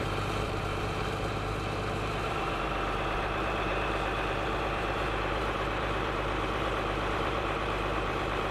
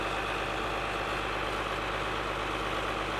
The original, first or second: second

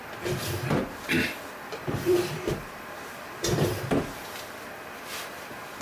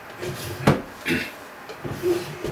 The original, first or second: second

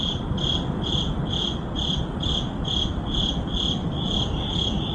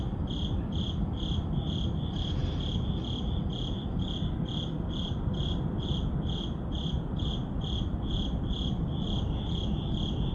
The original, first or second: second